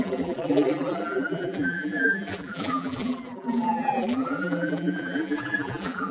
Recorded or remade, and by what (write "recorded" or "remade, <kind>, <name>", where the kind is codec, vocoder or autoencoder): remade, vocoder, BigVGAN v2